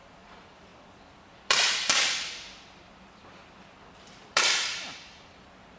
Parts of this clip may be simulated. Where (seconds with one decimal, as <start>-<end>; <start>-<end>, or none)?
0.0-5.8